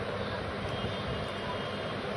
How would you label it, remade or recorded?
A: recorded